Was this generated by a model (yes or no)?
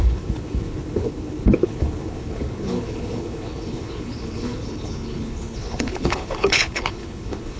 yes